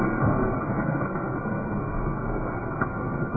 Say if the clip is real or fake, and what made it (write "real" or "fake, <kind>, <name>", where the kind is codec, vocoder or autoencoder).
fake, codec, SNAC